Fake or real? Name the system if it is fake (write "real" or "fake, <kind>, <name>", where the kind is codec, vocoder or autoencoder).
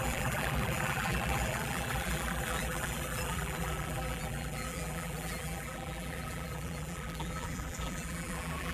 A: fake, vocoder, BigVGAN v2